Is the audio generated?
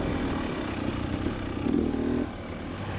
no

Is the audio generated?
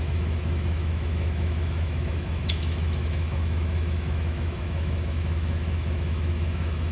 yes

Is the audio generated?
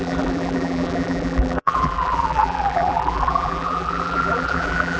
yes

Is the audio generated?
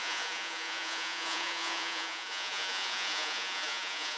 yes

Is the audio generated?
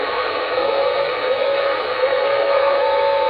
yes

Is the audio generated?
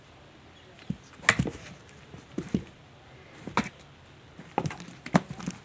no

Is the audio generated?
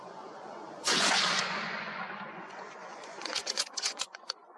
yes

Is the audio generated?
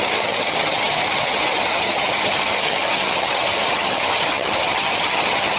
yes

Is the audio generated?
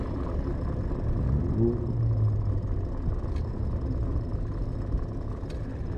no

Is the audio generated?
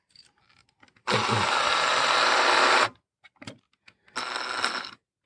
no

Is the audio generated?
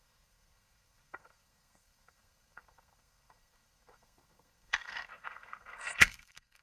yes